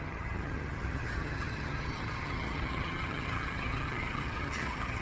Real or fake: fake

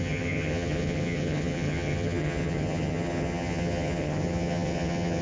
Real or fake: fake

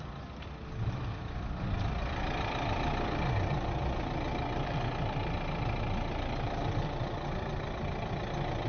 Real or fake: real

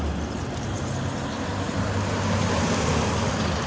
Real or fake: real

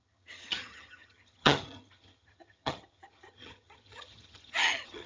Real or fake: fake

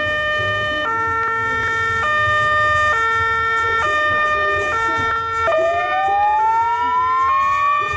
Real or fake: real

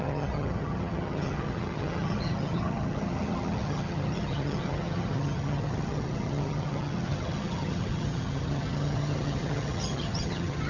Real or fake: fake